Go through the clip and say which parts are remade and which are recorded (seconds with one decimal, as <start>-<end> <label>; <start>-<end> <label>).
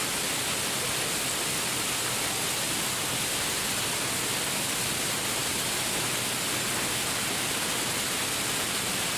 0.0-9.2 recorded